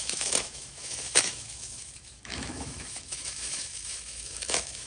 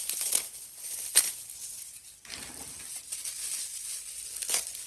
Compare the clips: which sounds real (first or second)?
second